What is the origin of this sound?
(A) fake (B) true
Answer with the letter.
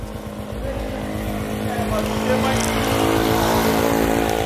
B